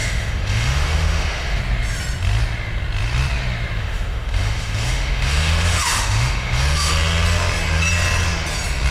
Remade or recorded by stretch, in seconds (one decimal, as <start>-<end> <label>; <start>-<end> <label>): 0.0-1.6 remade; 1.6-3.8 recorded; 3.8-6.9 remade; 6.9-8.9 recorded